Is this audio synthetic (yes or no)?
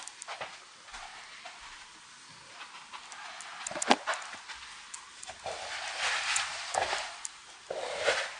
no